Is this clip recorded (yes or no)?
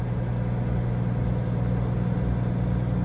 yes